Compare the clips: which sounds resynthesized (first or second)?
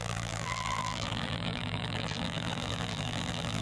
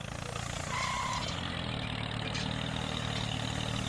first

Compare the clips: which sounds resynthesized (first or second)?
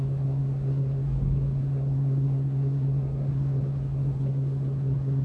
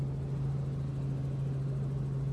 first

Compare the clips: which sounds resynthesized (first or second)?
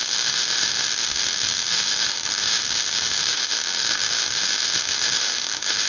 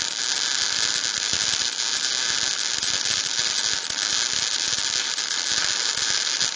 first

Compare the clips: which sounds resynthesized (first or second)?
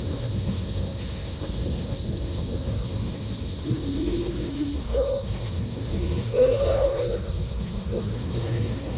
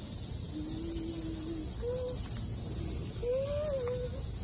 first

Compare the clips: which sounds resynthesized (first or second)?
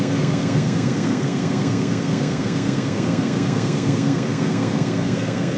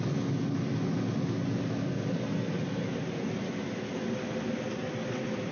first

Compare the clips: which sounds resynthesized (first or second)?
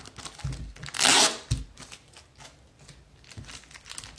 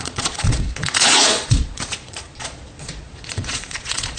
second